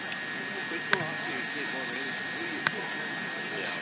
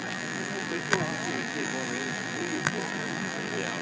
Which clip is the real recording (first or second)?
first